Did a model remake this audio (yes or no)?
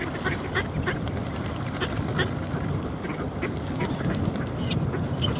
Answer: no